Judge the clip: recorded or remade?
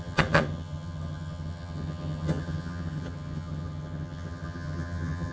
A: remade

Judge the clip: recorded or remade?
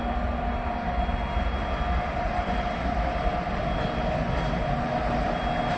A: recorded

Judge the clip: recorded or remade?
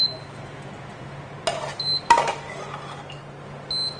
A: recorded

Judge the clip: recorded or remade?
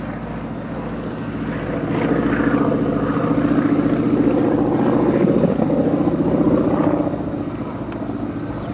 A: recorded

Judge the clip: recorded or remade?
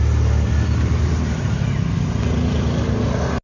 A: recorded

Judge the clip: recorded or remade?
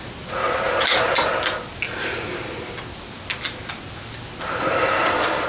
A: recorded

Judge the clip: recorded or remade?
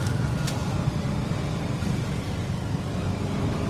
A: recorded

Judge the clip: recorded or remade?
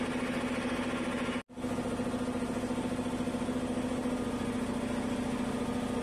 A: recorded